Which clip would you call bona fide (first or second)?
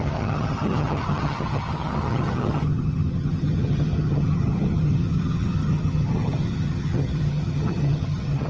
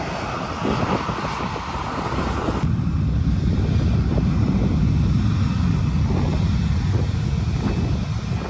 second